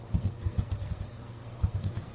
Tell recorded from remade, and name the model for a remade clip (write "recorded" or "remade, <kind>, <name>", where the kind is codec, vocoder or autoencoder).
remade, codec, SNAC